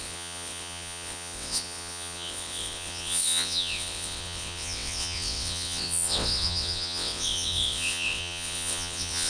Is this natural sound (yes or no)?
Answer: no